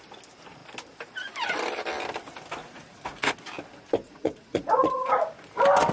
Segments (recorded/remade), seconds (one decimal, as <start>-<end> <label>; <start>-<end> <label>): 0.0-2.6 recorded; 2.6-3.3 remade; 3.3-4.0 recorded; 4.0-5.3 remade; 5.3-5.9 recorded